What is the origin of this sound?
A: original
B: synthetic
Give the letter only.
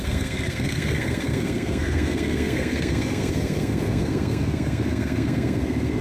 B